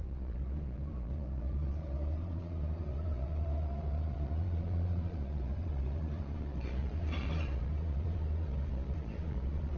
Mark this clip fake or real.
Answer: fake